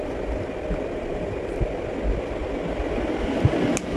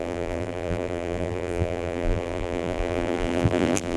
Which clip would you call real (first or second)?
first